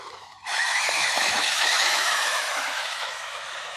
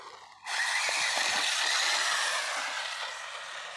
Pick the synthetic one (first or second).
first